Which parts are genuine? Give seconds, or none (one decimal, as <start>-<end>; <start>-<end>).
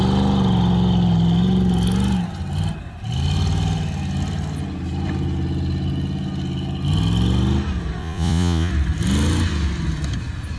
0.0-8.0; 8.7-10.6